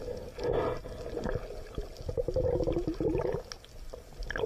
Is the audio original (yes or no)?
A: yes